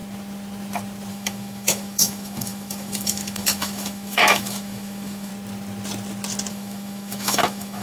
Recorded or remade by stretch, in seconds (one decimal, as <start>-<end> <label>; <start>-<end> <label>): 0.0-1.1 recorded; 1.1-5.3 remade; 5.3-6.5 recorded; 6.5-7.8 remade